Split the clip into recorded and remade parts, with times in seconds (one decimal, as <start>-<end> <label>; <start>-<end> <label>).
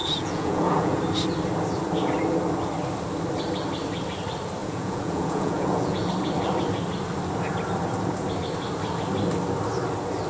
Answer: 0.0-1.0 remade; 1.0-4.6 recorded; 4.6-6.1 remade; 6.1-10.3 recorded